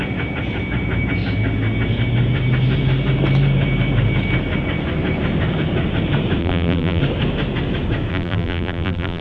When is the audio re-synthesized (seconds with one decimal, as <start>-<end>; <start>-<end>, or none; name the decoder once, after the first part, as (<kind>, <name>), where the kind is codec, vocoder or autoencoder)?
6.4-7.0 (vocoder, BigVGAN v2); 8.1-9.2